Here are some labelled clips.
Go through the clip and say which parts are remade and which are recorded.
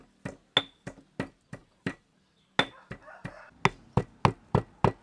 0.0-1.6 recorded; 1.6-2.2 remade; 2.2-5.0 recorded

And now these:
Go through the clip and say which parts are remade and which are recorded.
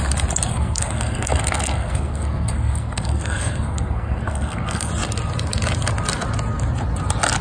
0.0-0.5 recorded; 0.5-4.9 remade; 4.9-7.4 recorded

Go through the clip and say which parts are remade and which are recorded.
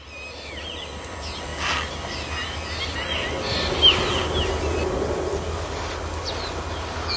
0.0-7.2 recorded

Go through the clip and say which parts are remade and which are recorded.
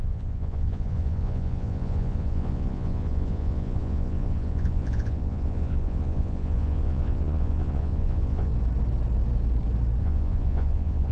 0.0-8.5 remade; 8.5-10.0 recorded; 10.0-11.1 remade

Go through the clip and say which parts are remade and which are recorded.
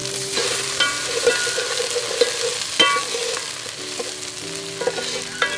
0.0-1.3 remade; 1.3-5.6 recorded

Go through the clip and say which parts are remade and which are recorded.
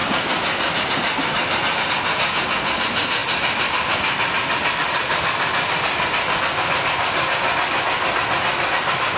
0.0-9.2 recorded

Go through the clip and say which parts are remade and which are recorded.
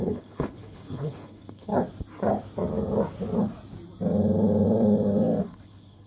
0.0-1.7 remade; 1.7-5.4 recorded; 5.4-6.1 remade